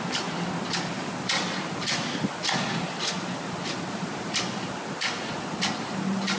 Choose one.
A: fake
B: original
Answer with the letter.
B